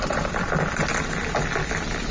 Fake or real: real